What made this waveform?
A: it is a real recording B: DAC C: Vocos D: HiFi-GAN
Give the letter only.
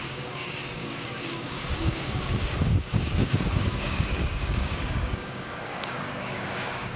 B